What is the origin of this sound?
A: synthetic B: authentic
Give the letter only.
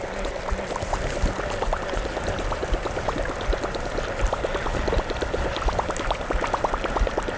B